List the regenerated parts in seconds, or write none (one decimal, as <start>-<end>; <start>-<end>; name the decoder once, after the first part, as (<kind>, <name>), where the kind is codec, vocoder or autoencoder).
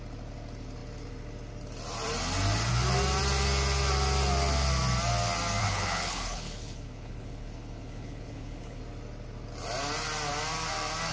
5.6-8.8 (codec, HILCodec)